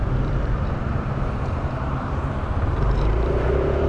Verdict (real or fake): fake